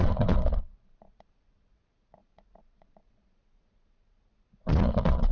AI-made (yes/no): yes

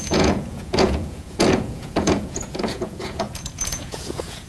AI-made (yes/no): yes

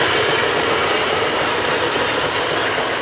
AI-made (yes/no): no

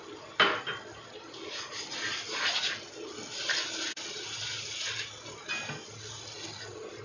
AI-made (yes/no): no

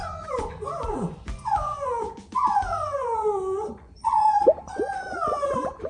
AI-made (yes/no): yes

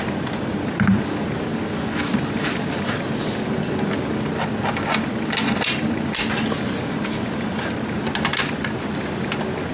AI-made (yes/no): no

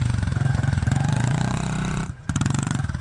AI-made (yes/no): yes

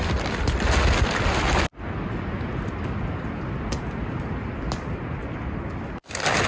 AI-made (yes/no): no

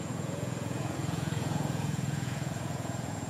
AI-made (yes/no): yes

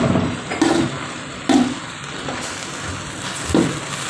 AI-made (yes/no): no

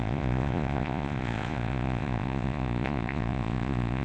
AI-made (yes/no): yes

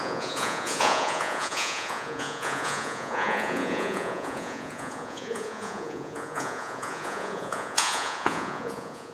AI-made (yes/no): yes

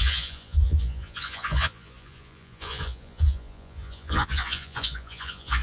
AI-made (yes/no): yes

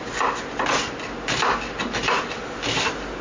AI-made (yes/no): no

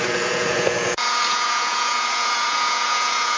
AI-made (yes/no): yes